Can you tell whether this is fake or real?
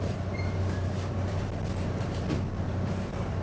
fake